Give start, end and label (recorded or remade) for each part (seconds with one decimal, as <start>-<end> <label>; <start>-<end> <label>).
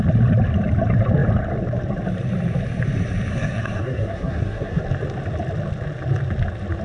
0.0-3.3 recorded; 3.3-4.8 remade; 4.8-6.8 recorded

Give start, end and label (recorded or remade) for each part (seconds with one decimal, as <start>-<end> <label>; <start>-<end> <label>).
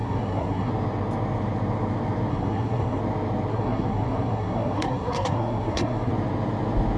0.0-0.7 remade; 0.7-2.3 recorded; 2.3-3.0 remade; 3.0-3.5 recorded; 3.5-6.1 remade; 6.1-7.0 recorded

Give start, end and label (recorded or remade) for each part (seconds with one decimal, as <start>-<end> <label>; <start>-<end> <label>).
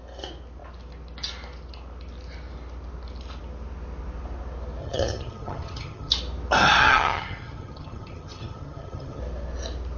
0.0-4.8 recorded; 4.8-6.1 remade; 6.1-6.8 recorded; 6.8-9.2 remade; 9.2-10.0 recorded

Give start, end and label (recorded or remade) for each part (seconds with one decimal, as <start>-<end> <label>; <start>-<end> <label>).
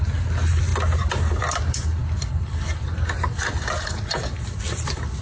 0.0-5.2 recorded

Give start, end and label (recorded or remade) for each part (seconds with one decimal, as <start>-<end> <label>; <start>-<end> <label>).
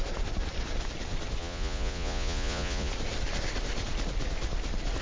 0.0-1.4 recorded; 1.4-2.9 remade; 2.9-5.0 recorded